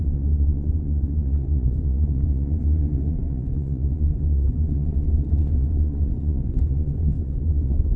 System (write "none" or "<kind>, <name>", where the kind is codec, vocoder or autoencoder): vocoder, Vocos